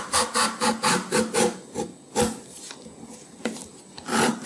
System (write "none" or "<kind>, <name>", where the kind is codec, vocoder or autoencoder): none